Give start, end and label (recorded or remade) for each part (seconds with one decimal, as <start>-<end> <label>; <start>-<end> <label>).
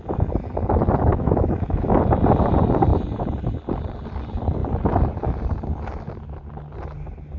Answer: 0.0-1.1 recorded; 1.1-2.0 remade; 2.0-7.4 recorded